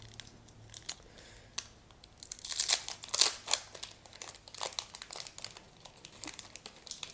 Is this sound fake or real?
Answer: real